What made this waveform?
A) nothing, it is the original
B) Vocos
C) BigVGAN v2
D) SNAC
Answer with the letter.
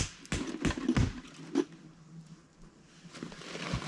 A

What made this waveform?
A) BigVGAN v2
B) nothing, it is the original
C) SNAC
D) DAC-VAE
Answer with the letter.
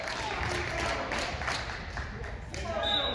B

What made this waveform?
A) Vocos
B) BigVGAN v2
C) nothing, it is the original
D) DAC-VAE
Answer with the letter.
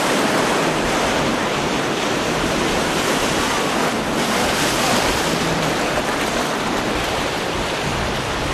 C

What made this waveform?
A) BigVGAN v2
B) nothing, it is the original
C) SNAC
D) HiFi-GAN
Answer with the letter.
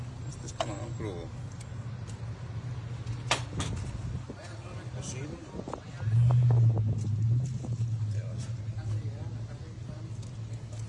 B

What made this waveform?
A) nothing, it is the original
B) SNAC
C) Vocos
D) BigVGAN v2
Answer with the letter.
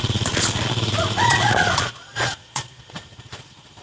C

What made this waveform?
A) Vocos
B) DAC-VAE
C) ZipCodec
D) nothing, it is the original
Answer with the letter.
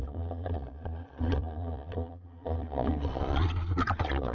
A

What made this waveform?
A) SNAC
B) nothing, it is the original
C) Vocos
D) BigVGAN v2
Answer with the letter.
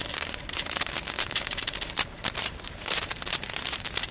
D